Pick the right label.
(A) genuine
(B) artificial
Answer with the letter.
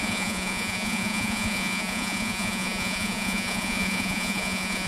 B